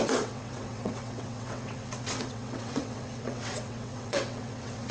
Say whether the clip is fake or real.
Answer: fake